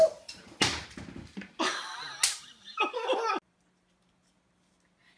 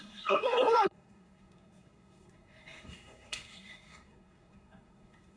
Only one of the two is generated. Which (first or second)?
second